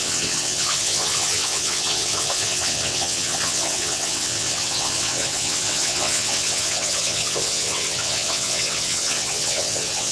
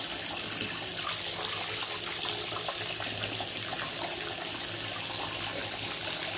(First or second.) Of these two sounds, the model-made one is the first